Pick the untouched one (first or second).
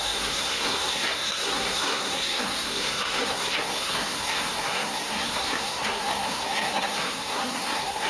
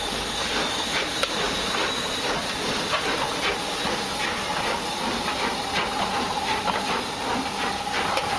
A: second